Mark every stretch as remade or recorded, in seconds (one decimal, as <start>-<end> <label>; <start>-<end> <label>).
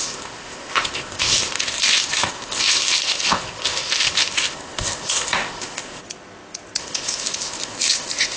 0.0-6.0 remade; 6.0-6.8 recorded; 6.8-8.4 remade